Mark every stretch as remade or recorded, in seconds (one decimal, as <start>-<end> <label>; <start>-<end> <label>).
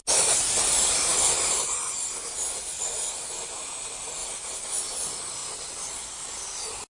0.0-6.9 recorded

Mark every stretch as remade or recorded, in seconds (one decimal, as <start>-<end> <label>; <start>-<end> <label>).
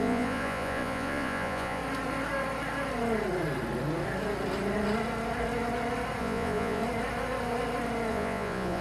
0.0-1.8 remade; 1.8-6.2 recorded; 6.2-6.8 remade; 6.8-8.1 recorded; 8.1-8.8 remade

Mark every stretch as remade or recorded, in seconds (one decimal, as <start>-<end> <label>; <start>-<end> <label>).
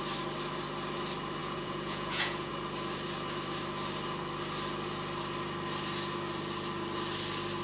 0.0-1.4 recorded; 1.4-2.5 remade; 2.5-7.6 recorded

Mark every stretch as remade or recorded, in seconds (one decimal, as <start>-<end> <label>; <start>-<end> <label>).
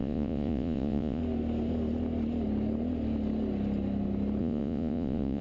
0.0-1.2 remade; 1.2-4.4 recorded; 4.4-5.4 remade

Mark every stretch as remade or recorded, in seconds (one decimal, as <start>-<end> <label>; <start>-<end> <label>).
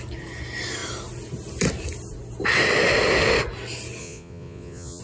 0.0-4.0 recorded; 4.0-5.0 remade